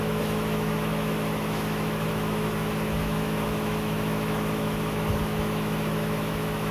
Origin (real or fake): fake